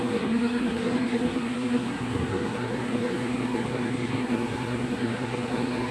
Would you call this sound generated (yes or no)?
yes